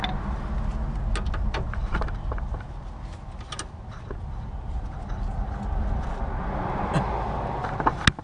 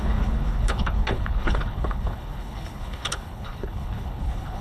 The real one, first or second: first